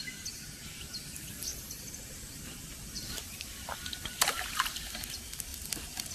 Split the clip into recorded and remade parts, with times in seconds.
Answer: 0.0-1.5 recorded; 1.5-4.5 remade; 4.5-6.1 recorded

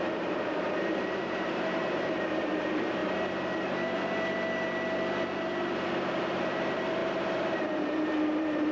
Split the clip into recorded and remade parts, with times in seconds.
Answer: 0.0-3.0 remade; 3.0-6.1 recorded; 6.1-8.7 remade

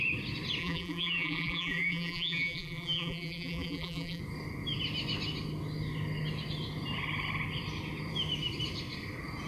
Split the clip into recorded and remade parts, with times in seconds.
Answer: 0.0-0.6 recorded; 0.6-4.2 remade; 4.2-9.5 recorded

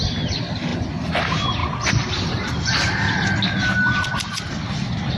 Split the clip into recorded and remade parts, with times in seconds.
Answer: 0.0-5.2 recorded